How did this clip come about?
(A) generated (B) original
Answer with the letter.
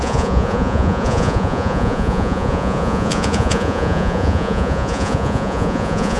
A